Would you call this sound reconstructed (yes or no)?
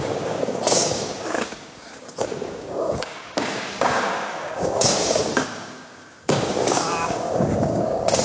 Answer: yes